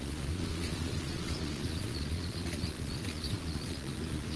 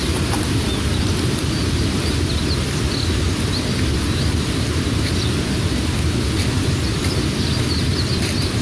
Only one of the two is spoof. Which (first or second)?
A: first